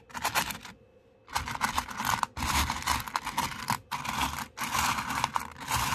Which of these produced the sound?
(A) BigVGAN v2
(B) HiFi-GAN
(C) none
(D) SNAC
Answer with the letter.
C